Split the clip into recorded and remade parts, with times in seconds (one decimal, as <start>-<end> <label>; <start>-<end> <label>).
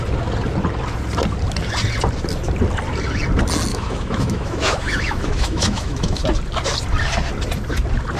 0.0-3.7 recorded; 3.7-6.2 remade; 6.2-8.2 recorded